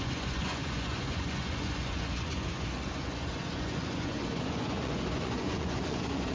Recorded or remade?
remade